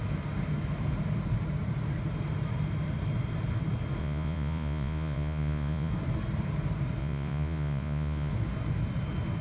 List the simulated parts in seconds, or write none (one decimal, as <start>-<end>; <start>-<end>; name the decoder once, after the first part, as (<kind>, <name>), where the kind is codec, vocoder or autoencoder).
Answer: 4.0-5.9 (vocoder, Vocos); 7.0-8.3